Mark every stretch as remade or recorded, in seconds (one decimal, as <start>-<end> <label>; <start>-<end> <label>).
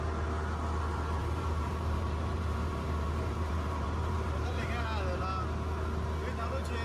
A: 0.0-1.2 recorded; 1.2-4.8 remade; 4.8-6.8 recorded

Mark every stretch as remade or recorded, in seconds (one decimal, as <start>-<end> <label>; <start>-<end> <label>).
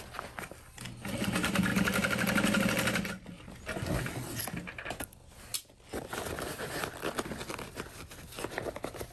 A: 0.0-9.1 recorded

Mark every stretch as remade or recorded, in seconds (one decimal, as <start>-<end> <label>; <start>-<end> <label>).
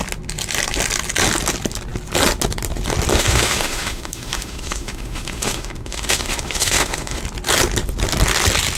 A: 0.0-3.1 recorded; 3.1-7.2 remade; 7.2-8.8 recorded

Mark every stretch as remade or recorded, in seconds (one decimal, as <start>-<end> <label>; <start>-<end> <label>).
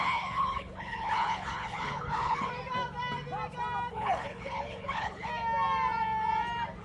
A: 0.0-2.5 remade; 2.5-3.9 recorded; 3.9-5.3 remade; 5.3-6.8 recorded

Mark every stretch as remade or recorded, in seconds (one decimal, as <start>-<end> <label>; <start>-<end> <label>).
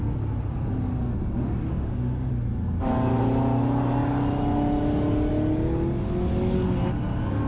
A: 0.0-1.7 recorded; 1.7-2.3 remade; 2.3-7.5 recorded